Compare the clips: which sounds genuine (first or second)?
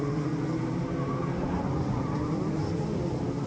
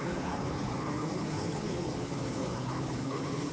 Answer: first